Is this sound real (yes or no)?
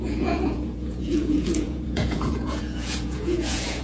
no